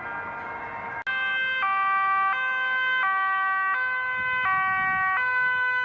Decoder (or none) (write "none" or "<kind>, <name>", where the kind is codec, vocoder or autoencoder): none